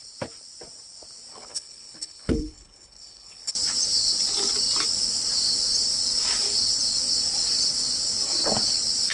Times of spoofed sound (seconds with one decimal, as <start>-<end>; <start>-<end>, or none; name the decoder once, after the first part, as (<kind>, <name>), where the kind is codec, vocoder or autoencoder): 1.3-3.5 (codec, HILCodec)